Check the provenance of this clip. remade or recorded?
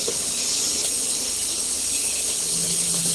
remade